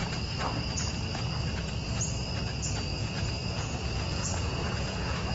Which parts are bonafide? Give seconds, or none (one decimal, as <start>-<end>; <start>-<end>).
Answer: 0.0-3.0